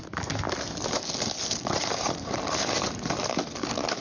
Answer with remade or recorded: recorded